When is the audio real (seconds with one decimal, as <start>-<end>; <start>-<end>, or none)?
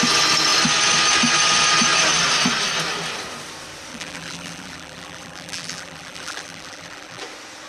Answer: 0.0-3.9; 7.2-7.7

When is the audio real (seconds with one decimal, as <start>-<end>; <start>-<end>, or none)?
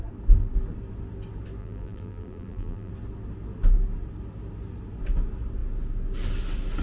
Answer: 0.0-1.6; 2.9-6.8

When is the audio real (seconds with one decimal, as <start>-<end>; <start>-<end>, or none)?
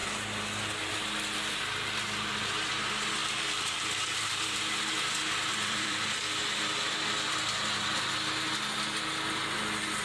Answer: 0.0-3.2; 4.6-5.5; 6.4-10.0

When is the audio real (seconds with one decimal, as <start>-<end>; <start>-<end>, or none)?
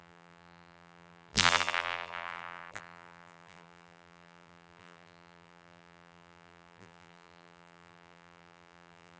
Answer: none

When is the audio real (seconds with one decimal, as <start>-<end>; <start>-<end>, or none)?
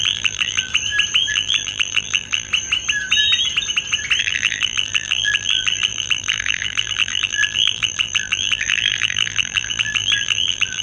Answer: 0.7-1.3; 2.5-4.2